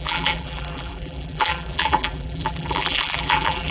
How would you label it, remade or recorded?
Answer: remade